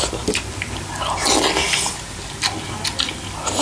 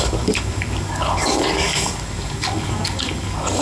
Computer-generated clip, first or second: second